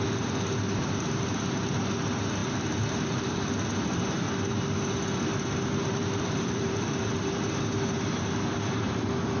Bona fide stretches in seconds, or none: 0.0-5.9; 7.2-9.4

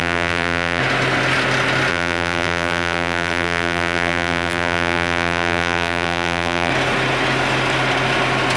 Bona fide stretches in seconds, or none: 0.8-1.9; 6.7-8.6

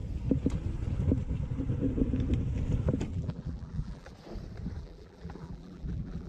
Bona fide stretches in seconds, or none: 0.0-3.1; 4.1-4.8

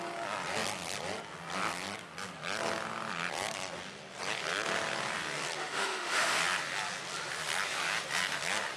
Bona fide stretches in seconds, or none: 0.0-5.6; 6.4-8.8

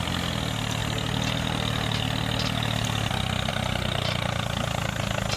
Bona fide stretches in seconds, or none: 0.0-5.4

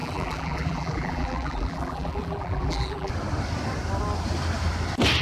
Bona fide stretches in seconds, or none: 3.1-5.2